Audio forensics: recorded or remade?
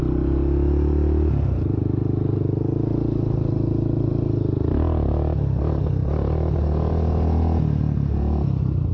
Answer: recorded